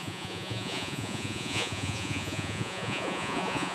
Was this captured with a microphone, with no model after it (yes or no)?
no